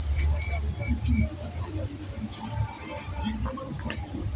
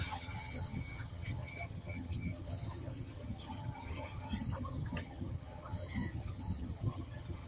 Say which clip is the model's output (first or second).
second